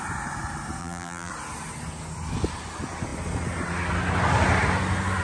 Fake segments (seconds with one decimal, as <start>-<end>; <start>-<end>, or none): 0.8-1.3